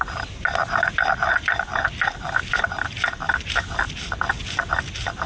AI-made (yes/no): no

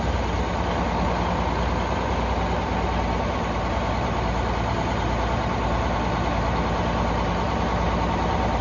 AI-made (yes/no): no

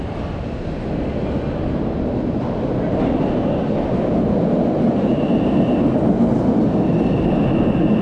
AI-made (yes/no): no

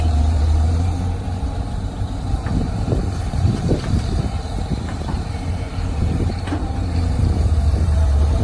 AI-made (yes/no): yes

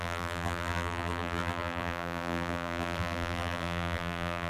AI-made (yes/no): yes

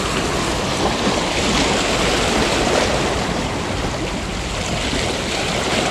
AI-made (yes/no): no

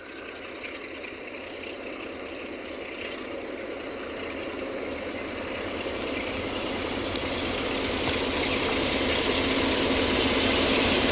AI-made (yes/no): no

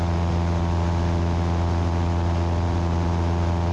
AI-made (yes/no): no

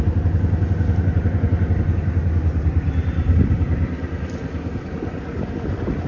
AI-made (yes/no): no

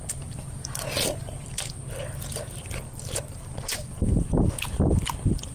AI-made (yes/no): yes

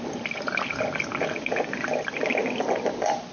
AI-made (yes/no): no